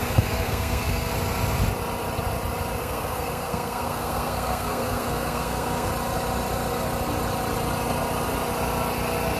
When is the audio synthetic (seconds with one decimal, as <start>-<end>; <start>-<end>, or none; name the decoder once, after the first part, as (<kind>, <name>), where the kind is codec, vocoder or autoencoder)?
0.0-1.1 (codec, SNAC); 2.8-5.9